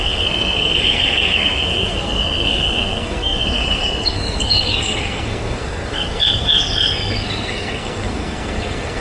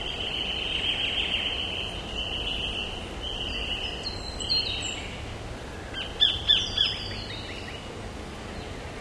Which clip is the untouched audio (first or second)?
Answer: second